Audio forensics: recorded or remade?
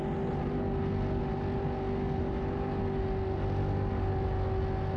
recorded